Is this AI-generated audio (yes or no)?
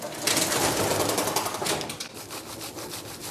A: no